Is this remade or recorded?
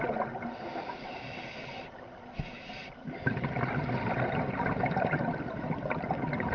recorded